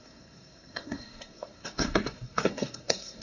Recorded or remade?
remade